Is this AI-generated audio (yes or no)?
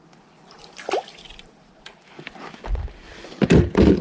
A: no